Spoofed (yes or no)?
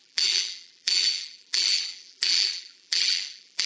yes